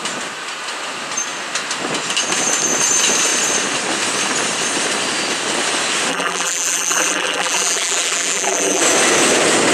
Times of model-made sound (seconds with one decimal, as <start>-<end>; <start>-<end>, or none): 6.1-8.8